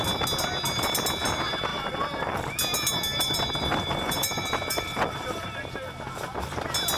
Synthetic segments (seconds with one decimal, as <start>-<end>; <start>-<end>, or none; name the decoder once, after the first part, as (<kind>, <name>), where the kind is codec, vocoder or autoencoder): 1.7-2.5 (vocoder, BigVGAN v2); 3.1-5.5